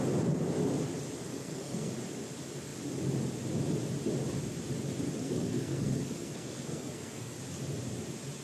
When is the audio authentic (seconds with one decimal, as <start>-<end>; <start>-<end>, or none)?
0.0-1.3; 1.9-5.2; 7.4-8.4